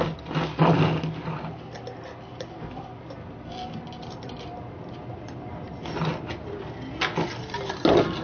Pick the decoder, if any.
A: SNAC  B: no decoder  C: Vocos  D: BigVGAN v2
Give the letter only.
B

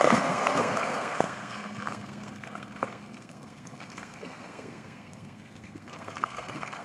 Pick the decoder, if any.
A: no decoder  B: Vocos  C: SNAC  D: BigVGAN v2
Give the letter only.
C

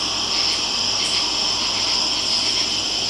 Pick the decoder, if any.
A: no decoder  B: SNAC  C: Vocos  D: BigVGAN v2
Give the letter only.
A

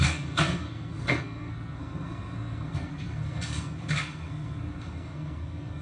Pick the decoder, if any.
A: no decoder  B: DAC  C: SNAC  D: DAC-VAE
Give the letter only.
C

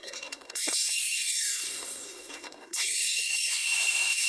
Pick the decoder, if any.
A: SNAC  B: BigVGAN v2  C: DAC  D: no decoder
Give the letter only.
A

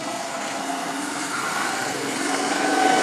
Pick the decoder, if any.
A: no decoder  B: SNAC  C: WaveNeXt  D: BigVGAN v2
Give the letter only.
B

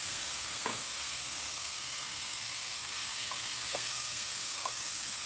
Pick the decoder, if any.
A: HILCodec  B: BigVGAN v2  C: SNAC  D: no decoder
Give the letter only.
C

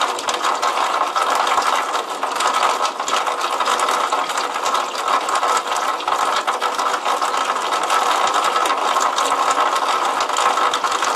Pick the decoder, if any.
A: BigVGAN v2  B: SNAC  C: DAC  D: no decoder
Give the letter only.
D